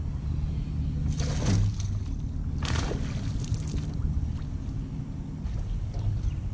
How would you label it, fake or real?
real